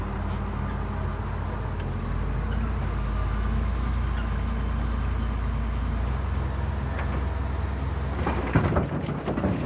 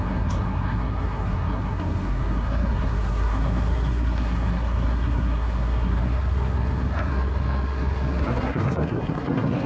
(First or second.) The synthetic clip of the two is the second